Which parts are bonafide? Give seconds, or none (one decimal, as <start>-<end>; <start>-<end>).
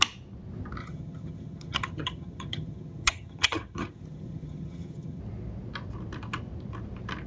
0.0-0.8; 5.2-7.3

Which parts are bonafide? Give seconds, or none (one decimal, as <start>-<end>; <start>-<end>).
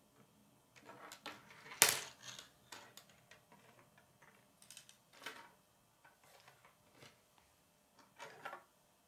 0.0-9.1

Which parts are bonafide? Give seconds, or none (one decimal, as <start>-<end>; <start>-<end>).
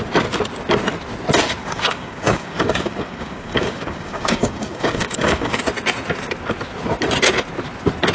0.0-1.6; 5.6-8.1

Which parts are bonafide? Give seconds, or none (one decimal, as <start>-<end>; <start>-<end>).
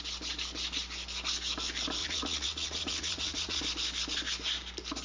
0.0-2.0; 3.6-5.0